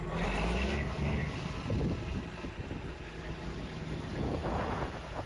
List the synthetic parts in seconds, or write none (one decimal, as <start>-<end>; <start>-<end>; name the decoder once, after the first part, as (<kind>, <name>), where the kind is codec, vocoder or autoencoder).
4.1-5.3 (vocoder, Vocos)